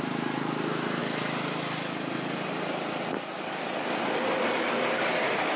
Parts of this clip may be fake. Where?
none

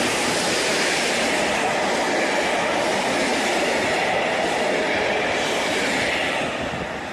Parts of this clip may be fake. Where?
none

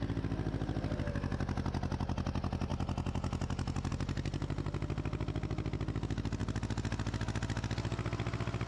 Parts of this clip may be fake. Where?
none

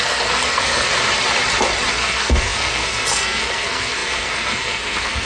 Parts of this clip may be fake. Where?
0.0-0.9 (codec, SNAC); 1.9-5.3